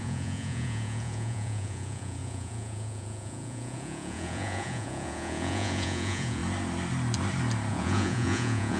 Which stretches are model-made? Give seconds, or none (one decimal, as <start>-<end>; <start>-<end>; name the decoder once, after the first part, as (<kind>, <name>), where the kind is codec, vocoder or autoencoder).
0.0-6.4 (vocoder, Vocos); 7.7-8.8